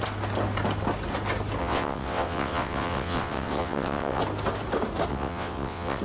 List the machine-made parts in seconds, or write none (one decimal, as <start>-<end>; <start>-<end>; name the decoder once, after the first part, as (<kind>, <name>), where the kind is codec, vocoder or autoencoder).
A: 1.6-4.2 (vocoder, WaveNeXt); 5.1-6.0